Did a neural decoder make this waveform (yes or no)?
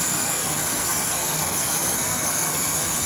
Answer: yes